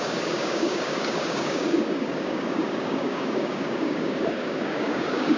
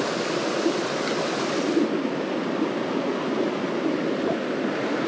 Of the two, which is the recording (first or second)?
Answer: second